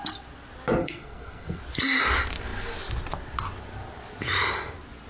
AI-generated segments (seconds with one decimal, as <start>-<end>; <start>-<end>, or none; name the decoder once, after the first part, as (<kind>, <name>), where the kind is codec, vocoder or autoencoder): 0.8-1.6 (codec, SNAC)